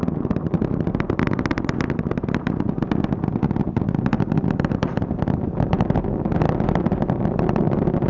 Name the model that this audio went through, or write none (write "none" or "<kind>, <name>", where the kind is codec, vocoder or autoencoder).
none